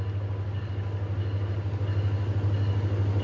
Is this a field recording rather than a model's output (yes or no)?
yes